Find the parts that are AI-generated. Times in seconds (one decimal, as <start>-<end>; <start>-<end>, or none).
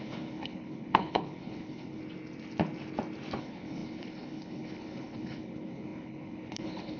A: 0.0-2.0; 3.4-7.0